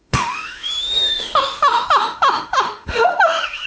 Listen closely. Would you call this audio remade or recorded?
remade